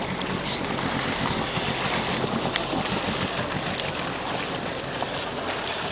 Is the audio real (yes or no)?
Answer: yes